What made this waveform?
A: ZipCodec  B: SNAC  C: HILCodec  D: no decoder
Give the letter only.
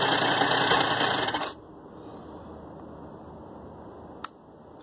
D